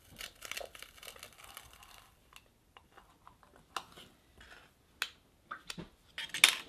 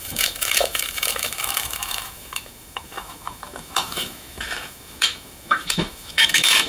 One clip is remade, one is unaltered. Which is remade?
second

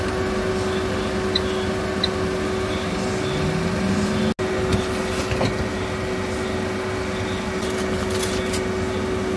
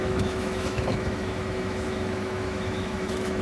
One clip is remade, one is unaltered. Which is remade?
second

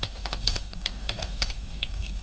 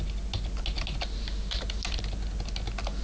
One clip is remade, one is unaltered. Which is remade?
first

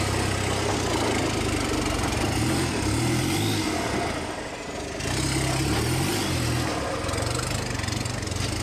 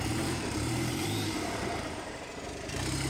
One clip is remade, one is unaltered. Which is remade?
second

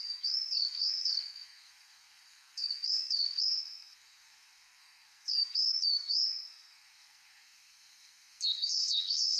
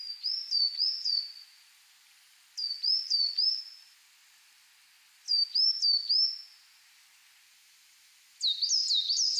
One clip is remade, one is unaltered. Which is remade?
first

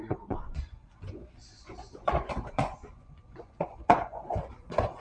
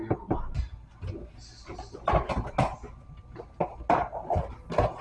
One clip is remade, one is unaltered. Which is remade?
first